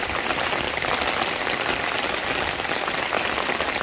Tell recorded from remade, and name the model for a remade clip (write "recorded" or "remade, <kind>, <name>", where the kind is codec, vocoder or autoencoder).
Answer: recorded